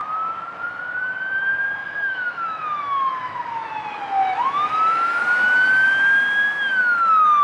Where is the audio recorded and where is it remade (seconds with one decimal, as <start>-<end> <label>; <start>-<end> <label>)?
0.0-1.8 recorded; 1.8-5.2 remade; 5.2-7.4 recorded